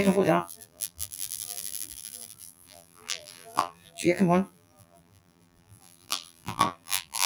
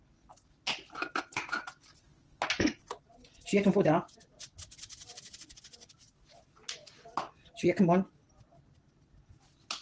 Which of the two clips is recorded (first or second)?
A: second